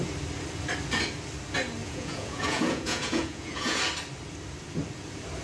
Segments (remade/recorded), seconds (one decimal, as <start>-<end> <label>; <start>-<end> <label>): 0.0-1.8 recorded; 1.8-3.8 remade; 3.8-5.4 recorded